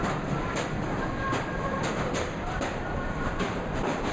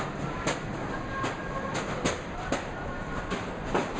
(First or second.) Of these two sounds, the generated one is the first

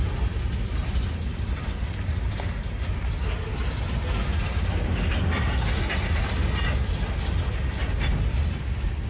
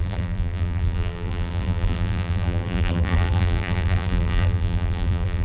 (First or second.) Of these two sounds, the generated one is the second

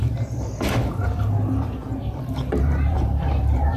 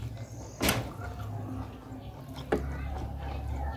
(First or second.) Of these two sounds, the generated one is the first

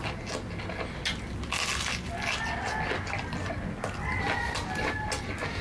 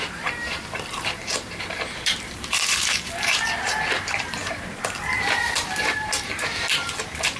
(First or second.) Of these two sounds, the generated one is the second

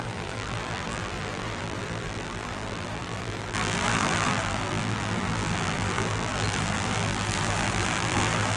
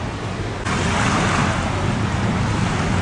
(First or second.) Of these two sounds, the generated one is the first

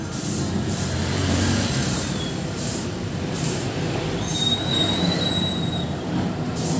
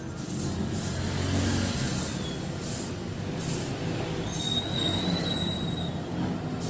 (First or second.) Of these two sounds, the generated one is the first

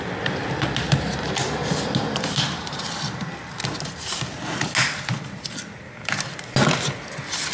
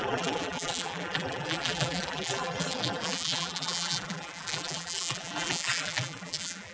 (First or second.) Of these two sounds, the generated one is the second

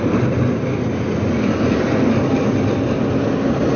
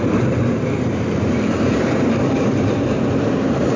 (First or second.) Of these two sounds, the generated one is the second